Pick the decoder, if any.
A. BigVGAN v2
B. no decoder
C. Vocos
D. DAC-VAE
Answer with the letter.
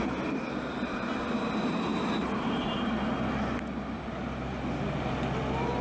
B